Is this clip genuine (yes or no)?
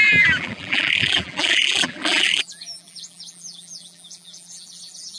no